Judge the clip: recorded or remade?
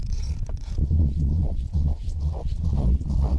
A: remade